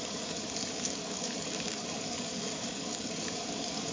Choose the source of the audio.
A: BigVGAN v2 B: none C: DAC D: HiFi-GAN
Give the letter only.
C